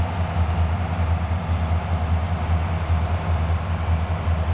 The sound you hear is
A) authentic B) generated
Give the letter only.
A